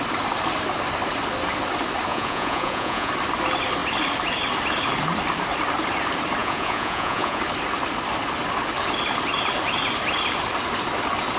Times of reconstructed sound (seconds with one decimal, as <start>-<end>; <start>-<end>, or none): 2.1-3.1; 6.4-7.4